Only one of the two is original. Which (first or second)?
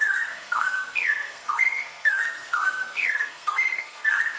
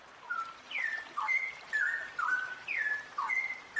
second